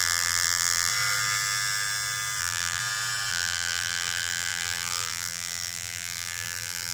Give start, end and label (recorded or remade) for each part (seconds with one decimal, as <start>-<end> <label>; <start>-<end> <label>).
0.0-0.9 remade; 0.9-2.4 recorded; 2.4-2.8 remade; 2.8-3.3 recorded; 3.3-6.9 remade